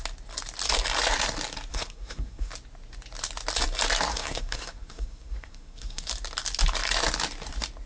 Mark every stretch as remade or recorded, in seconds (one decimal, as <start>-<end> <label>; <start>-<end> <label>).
0.0-1.7 recorded; 1.7-2.5 remade; 2.5-4.1 recorded; 4.1-6.1 remade; 6.1-7.9 recorded